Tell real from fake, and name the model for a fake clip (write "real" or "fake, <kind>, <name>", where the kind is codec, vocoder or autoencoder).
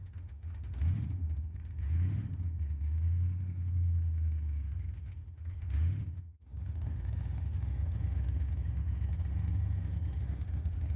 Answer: fake, autoencoder, DAC-VAE